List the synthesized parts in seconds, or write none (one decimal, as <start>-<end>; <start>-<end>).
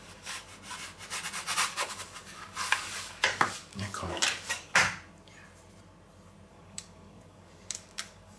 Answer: 0.0-0.5; 1.7-4.8; 6.5-8.4